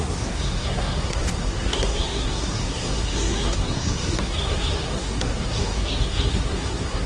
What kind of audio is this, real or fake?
fake